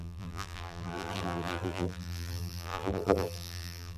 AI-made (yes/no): yes